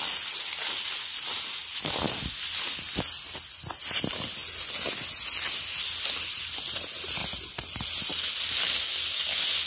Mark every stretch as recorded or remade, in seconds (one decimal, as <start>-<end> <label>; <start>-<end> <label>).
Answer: 0.0-9.7 recorded

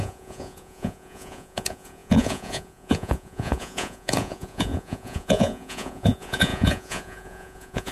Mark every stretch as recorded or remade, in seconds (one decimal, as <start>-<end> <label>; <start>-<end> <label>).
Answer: 0.0-7.9 remade

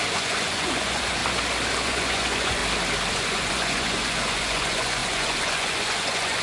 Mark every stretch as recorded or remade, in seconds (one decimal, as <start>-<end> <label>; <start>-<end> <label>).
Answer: 0.0-1.2 remade; 1.2-1.8 recorded; 1.8-2.6 remade; 2.6-3.1 recorded; 3.1-6.4 remade

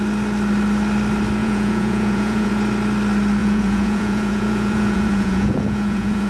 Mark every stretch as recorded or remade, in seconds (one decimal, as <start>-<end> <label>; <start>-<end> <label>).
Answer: 0.0-1.4 recorded; 1.4-2.5 remade; 2.5-3.4 recorded; 3.4-6.3 remade

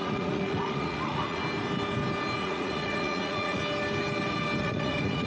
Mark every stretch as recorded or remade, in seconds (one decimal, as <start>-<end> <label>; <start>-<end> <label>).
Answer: 0.0-1.4 remade; 1.4-2.4 recorded; 2.4-3.6 remade; 3.6-4.6 recorded; 4.6-5.3 remade